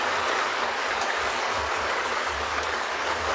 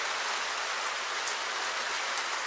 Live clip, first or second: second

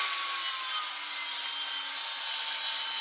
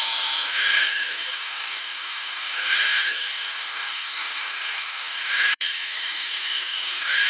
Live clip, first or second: first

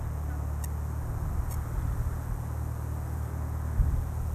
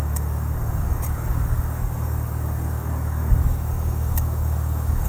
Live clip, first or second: first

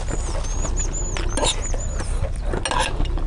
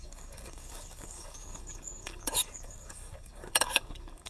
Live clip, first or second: first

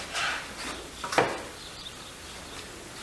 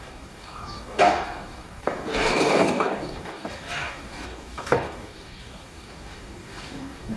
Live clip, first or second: first